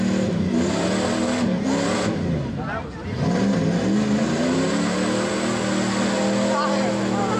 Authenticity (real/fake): real